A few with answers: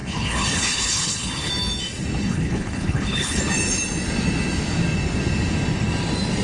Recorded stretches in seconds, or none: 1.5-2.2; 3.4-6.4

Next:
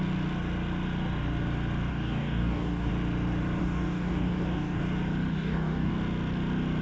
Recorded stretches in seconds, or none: 0.0-1.9; 2.9-3.6; 4.8-5.3; 5.9-6.8

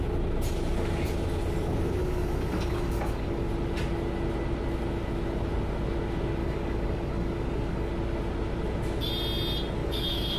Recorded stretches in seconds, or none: 0.0-2.0; 3.5-6.4; 7.9-9.8

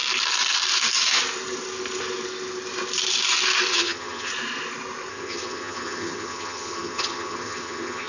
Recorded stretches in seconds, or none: 0.0-3.7; 4.3-5.1

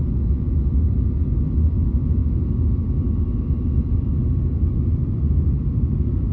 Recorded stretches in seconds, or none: 2.2-2.8

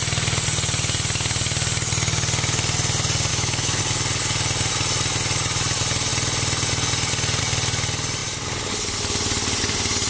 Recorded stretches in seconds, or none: 0.0-3.3; 3.8-10.1